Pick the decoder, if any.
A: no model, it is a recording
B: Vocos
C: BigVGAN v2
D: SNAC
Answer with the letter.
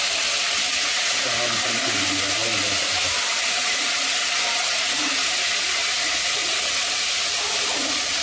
A